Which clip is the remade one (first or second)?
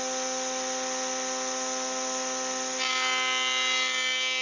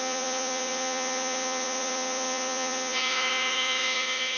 second